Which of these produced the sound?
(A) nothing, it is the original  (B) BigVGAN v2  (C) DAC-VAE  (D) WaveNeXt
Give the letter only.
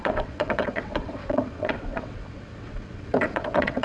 D